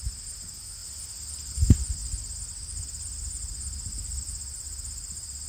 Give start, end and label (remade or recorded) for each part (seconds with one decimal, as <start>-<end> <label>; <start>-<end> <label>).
0.0-5.5 recorded